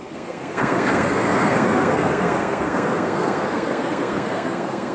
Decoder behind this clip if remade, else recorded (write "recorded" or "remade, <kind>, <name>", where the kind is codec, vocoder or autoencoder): remade, codec, SNAC